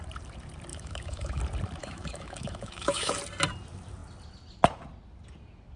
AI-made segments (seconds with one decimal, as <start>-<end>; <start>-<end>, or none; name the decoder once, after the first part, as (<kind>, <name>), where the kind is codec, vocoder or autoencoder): 0.7-1.4 (autoencoder, DAC-VAE); 1.8-3.1